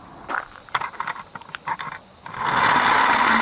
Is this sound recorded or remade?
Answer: recorded